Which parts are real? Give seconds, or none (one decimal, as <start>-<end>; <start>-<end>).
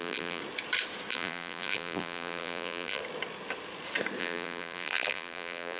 0.4-1.1; 3.0-4.2